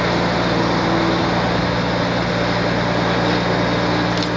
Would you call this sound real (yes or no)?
yes